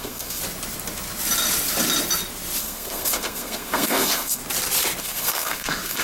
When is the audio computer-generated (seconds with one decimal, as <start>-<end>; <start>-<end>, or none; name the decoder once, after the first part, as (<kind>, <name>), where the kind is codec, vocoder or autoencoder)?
0.0-0.4 (codec, SNAC); 2.6-4.4; 5.0-6.0